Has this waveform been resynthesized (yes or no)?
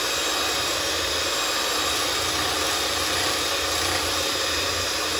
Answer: no